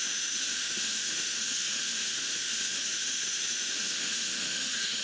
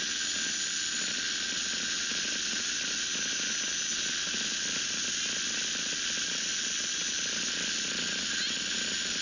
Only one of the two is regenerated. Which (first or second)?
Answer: first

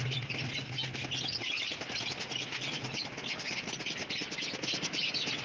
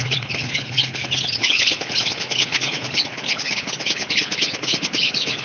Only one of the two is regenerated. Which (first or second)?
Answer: second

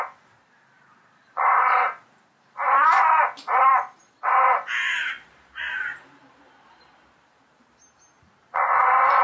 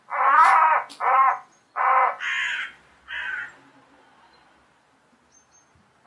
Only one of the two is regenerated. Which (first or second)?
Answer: first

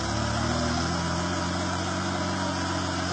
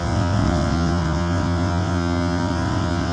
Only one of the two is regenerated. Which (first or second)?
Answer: second